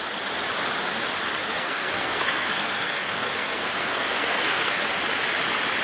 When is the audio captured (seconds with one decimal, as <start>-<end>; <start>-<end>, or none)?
0.0-1.4; 4.9-5.8